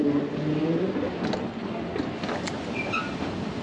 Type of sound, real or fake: real